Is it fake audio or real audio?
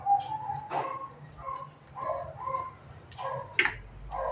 real